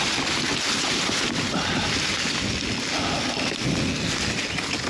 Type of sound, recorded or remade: recorded